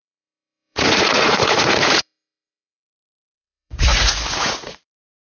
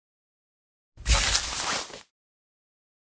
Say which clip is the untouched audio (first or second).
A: second